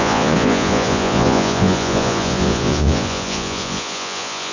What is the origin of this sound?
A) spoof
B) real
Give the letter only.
A